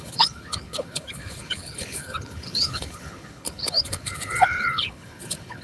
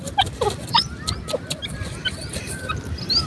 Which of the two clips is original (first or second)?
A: second